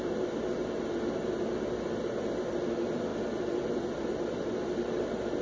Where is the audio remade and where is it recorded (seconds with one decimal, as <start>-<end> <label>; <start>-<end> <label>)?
0.0-5.4 recorded